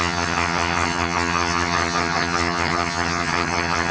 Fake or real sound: fake